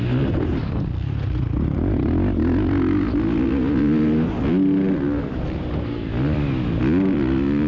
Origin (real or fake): real